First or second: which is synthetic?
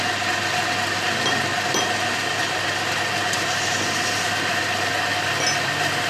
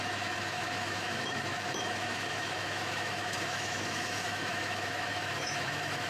second